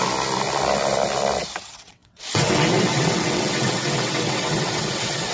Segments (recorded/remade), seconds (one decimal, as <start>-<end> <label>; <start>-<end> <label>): 0.0-1.4 recorded; 1.4-5.3 remade